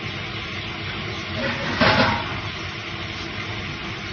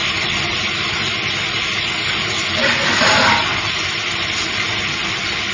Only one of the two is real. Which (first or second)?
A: first